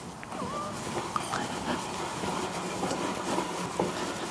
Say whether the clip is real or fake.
real